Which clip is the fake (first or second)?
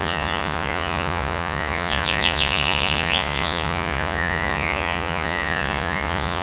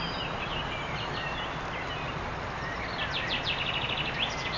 first